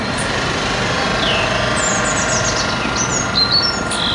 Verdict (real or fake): real